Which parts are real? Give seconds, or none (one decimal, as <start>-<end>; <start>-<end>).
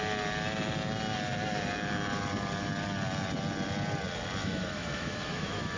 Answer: 0.0-4.4